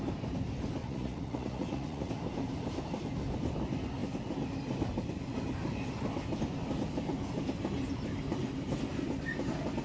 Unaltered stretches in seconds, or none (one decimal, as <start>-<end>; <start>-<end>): 0.0-0.8; 2.1-9.8